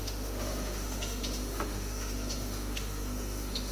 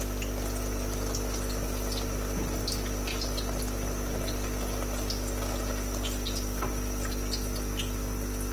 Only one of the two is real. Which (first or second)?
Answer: second